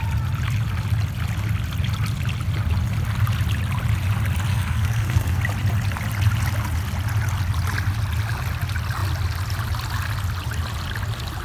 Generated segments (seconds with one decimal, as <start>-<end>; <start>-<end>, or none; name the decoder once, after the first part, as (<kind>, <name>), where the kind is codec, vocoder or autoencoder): 4.5-5.4 (codec, SNAC)